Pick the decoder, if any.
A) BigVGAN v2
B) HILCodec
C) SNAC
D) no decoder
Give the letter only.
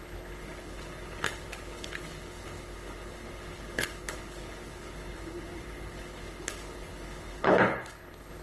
B